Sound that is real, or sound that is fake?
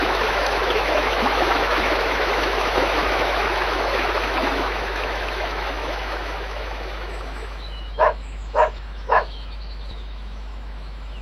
fake